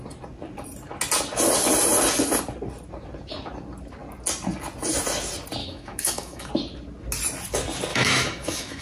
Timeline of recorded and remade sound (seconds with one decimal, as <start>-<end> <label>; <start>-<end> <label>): 0.0-5.6 recorded; 5.6-6.5 remade; 6.5-7.9 recorded; 7.9-8.8 remade

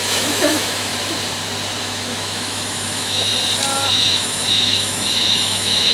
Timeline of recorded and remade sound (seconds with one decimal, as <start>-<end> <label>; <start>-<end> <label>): 0.0-0.9 remade; 0.9-1.8 recorded; 1.8-3.3 remade; 3.3-3.9 recorded; 3.9-5.9 remade